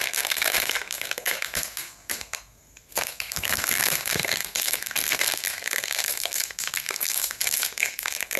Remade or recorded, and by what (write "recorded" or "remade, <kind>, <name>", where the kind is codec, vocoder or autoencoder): remade, codec, SNAC